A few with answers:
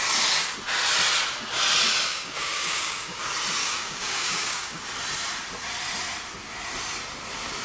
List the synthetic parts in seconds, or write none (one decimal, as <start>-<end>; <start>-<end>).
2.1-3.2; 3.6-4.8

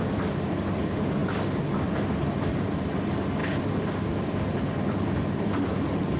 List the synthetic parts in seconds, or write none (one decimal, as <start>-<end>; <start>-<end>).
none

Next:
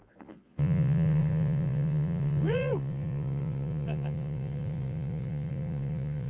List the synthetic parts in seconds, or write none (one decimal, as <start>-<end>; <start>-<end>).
0.0-6.3